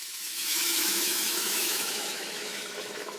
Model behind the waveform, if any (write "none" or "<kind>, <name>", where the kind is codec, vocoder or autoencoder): autoencoder, DAC-VAE